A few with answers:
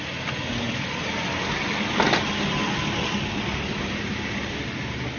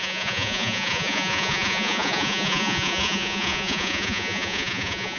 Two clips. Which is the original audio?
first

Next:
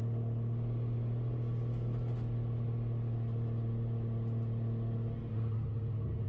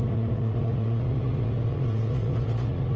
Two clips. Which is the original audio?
first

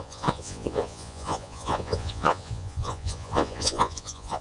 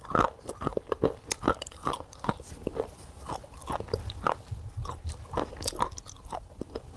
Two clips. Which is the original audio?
second